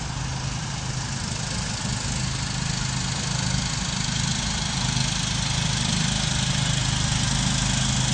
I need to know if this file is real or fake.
real